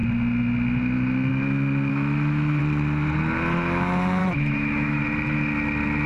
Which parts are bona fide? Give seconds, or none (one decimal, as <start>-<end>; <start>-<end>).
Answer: 0.0-1.9; 2.6-4.2; 5.0-6.1